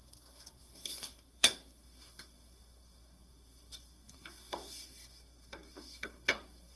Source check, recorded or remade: remade